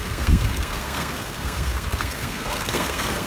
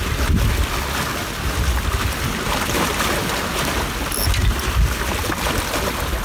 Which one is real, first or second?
second